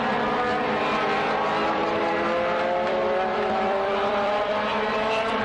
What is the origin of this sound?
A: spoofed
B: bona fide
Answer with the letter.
A